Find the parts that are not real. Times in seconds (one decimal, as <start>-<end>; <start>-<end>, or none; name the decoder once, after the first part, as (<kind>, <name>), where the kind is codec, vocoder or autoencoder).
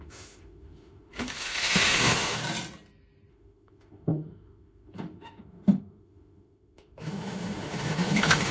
0.0-2.4 (autoencoder, DAC-VAE); 3.3-8.5